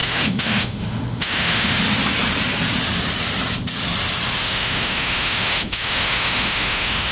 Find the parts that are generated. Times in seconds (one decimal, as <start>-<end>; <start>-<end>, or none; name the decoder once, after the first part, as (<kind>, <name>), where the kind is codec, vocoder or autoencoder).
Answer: 0.0-1.8 (autoencoder, DAC-VAE); 4.4-7.1